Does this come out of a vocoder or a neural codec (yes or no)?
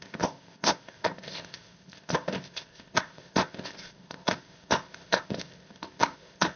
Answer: yes